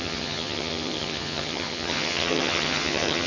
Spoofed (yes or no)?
yes